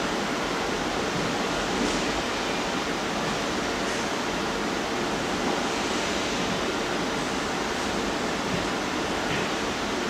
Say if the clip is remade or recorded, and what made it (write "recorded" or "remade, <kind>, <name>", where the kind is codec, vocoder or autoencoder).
recorded